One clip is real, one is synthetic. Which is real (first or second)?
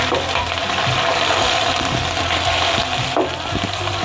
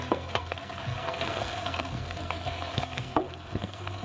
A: first